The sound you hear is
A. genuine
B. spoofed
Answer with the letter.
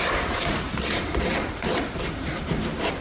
B